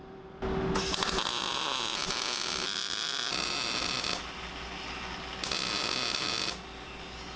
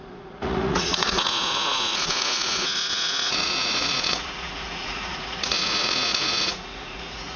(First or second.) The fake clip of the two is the second